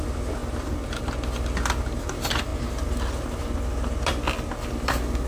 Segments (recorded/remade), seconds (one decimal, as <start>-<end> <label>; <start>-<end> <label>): 0.0-5.3 recorded